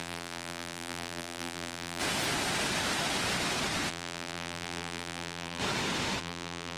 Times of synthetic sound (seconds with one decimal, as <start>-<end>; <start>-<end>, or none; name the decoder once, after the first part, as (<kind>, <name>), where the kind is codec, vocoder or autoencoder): 0.0-2.0 (vocoder, BigVGAN v2); 3.9-5.6; 6.2-6.8